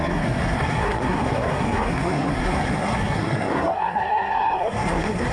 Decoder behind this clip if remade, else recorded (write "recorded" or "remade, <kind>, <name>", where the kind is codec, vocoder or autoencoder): remade, codec, SNAC